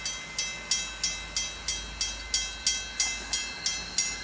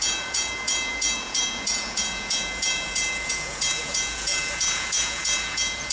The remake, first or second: second